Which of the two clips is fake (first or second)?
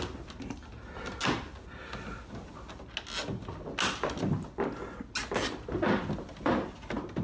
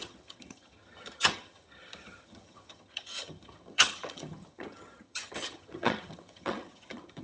second